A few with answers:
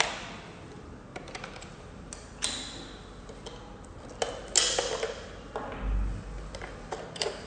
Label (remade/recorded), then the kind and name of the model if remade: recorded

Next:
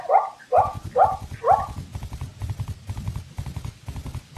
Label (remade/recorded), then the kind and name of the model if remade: recorded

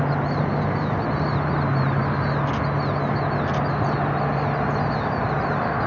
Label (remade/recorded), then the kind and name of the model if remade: recorded